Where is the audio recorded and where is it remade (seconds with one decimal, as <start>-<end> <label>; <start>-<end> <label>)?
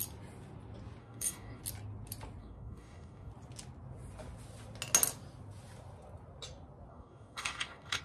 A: 0.0-1.0 recorded; 1.0-1.6 remade; 1.6-2.4 recorded; 2.4-3.3 remade; 3.3-6.9 recorded; 6.9-8.0 remade